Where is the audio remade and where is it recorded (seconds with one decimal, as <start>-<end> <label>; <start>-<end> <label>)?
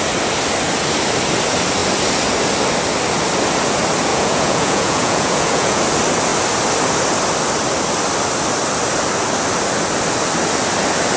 0.0-4.1 recorded; 4.1-5.8 remade; 5.8-11.2 recorded